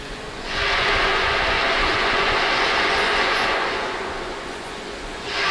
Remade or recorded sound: remade